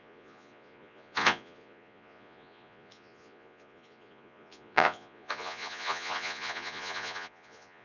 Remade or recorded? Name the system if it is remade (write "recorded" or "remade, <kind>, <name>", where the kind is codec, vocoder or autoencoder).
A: remade, vocoder, Vocos